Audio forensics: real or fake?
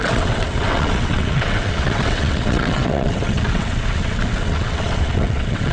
fake